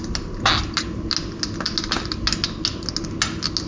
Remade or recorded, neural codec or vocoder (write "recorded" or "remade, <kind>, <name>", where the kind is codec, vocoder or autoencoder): recorded